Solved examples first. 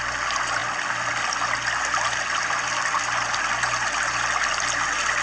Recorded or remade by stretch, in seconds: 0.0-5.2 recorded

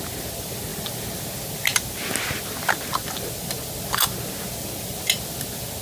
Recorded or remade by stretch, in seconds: 0.0-5.8 recorded

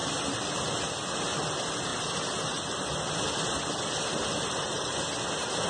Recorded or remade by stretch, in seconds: 0.0-5.7 recorded